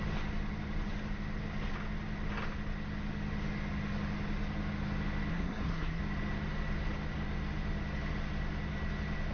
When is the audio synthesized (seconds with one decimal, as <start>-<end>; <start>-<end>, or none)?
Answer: 5.3-6.0